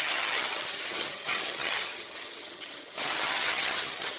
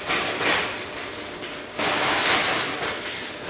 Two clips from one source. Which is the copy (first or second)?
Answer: first